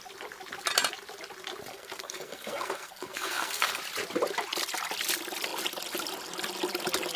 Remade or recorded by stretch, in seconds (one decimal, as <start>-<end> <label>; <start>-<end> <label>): 0.0-1.7 recorded; 1.7-3.8 remade; 3.8-7.2 recorded